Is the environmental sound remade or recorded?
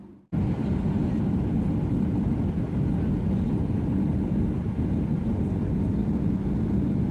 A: recorded